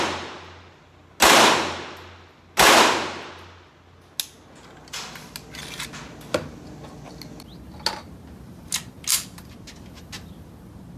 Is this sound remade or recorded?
recorded